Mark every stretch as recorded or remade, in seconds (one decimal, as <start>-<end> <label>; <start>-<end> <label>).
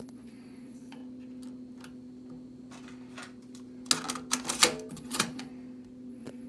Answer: 0.0-1.0 remade; 1.0-4.9 recorded; 4.9-5.5 remade; 5.5-6.1 recorded; 6.1-6.5 remade